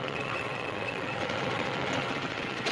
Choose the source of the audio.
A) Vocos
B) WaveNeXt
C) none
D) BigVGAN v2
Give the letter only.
B